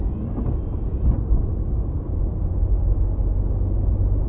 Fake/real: real